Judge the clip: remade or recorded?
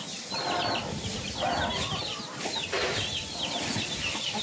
recorded